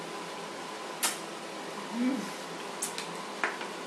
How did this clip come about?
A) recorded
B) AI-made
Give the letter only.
A